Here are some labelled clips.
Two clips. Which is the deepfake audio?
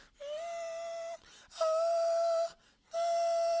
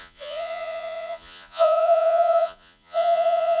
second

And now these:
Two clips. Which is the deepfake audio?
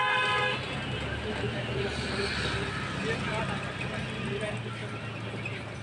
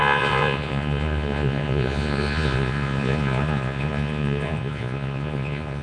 second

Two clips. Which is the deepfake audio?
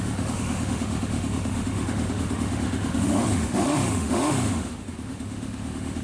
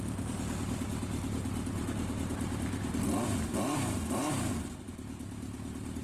first